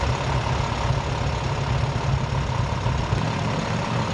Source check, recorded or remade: recorded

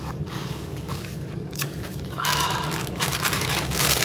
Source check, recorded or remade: remade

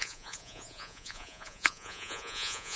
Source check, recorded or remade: remade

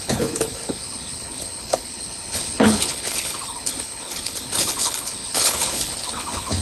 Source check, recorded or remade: remade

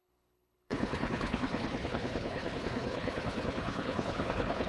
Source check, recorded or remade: remade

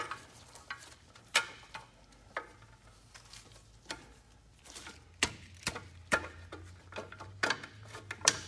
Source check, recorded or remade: recorded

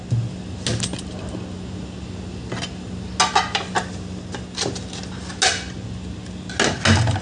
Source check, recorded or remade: recorded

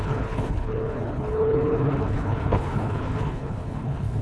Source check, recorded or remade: remade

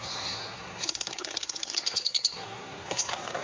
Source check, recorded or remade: remade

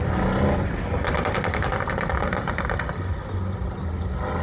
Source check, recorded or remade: recorded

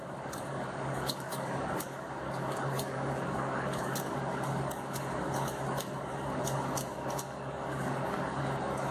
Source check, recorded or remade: remade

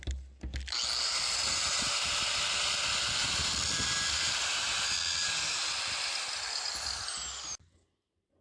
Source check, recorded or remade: recorded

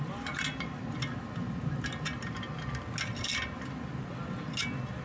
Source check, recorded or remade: recorded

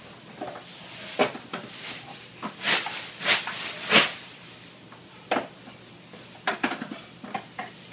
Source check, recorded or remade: recorded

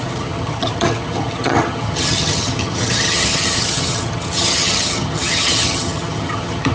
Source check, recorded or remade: remade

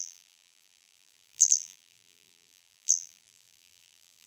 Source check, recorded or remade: remade